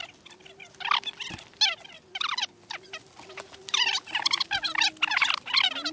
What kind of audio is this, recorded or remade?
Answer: recorded